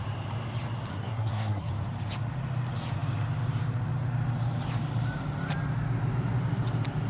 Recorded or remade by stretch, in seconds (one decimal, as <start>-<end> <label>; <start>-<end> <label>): 0.0-0.9 recorded; 0.9-1.7 remade; 1.7-7.1 recorded